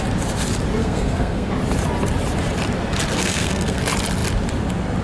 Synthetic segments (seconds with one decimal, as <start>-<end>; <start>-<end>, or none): 0.8-1.5; 3.2-3.8